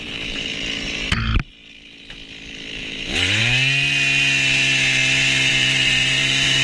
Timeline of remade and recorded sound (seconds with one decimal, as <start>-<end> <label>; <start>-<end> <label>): 0.0-1.3 remade; 1.3-2.7 recorded; 2.7-3.4 remade; 3.4-5.5 recorded; 5.5-6.6 remade